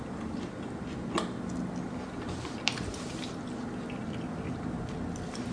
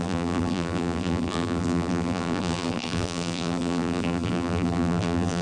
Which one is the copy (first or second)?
second